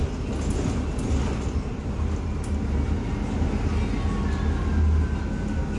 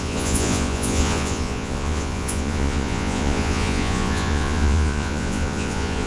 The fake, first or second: second